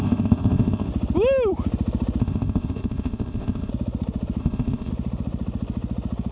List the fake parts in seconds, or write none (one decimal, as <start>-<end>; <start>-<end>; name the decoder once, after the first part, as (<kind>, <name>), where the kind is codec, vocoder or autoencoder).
0.0-0.9 (codec, ZipCodec); 2.2-3.7; 4.4-4.9